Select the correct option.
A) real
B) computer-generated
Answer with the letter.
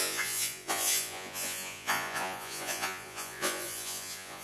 B